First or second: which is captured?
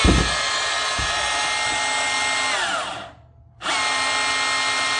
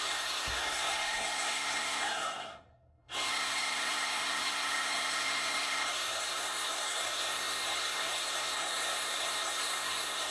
first